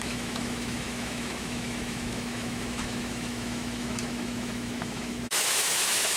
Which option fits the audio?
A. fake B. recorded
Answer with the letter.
A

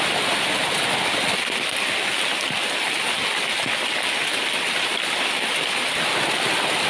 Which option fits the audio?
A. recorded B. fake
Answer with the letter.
A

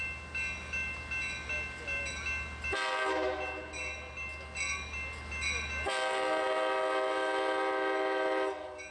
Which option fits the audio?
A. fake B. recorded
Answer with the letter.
B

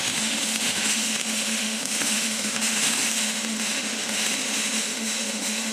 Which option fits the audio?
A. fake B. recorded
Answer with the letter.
A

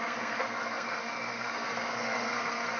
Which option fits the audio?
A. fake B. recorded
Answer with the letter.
A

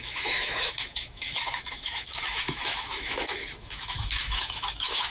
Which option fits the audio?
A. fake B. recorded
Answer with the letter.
A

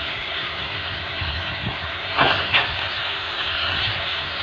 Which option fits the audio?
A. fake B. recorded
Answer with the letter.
A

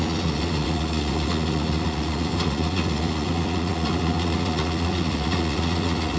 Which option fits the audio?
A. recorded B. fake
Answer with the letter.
B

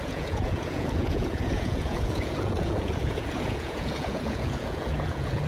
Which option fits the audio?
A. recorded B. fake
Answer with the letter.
B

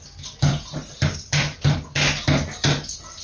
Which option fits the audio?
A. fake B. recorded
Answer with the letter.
B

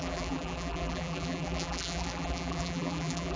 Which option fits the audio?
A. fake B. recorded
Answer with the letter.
A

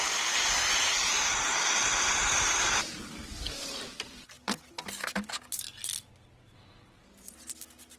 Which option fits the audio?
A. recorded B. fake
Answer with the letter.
A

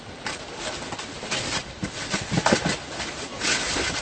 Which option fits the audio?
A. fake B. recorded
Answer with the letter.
B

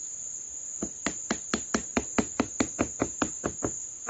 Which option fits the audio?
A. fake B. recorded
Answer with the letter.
B